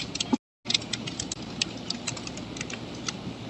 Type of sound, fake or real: real